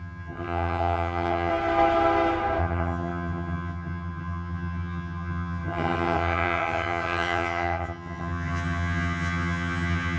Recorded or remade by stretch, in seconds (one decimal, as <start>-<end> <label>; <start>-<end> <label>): 0.0-1.5 remade; 1.5-2.6 recorded; 2.6-10.2 remade